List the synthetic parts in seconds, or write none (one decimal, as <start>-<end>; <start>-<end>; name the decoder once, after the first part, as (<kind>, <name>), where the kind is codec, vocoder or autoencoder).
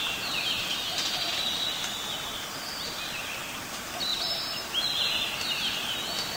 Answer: 4.1-4.7 (vocoder, BigVGAN v2)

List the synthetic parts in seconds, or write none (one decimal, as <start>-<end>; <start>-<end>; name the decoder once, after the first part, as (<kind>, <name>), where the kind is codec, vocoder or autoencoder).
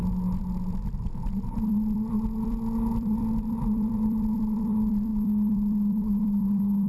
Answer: 0.8-6.9 (vocoder, BigVGAN v2)